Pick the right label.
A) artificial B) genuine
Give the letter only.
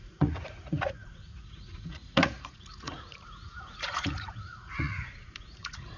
A